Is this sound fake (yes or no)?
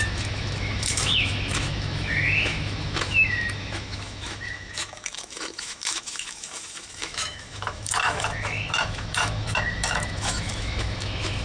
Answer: yes